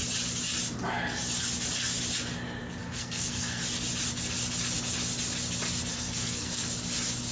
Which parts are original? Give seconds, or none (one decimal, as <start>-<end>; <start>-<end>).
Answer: 0.0-2.8; 3.6-5.9; 6.6-7.3